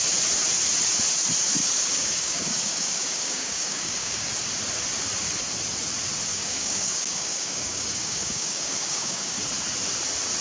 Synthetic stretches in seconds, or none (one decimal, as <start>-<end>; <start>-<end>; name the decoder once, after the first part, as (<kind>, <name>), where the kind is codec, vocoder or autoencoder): 1.6-4.3 (codec, DAC); 6.3-9.4